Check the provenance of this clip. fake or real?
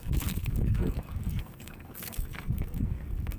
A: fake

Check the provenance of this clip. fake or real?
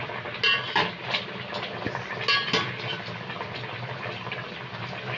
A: real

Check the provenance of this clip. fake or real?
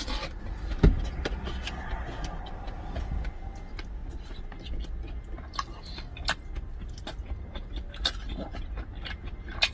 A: real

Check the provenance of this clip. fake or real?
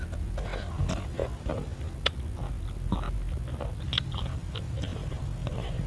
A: real